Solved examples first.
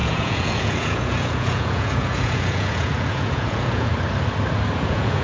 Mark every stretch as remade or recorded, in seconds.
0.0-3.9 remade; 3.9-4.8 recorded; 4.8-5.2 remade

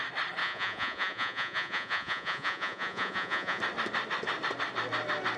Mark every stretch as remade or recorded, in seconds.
0.0-0.4 recorded; 0.4-3.6 remade; 3.6-5.4 recorded

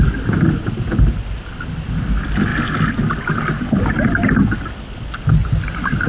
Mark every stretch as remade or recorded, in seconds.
0.0-6.1 recorded

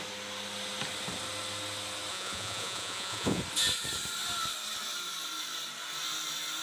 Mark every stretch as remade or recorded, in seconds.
0.0-2.1 recorded; 2.1-3.4 remade; 3.4-6.6 recorded